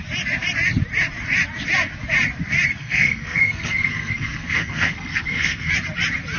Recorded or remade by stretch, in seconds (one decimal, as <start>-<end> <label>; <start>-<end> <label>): 0.0-2.8 recorded; 2.8-5.7 remade; 5.7-6.4 recorded